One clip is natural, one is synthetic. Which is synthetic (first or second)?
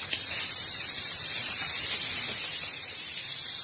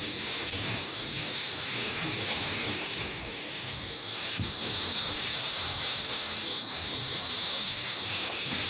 second